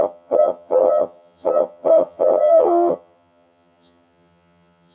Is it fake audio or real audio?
fake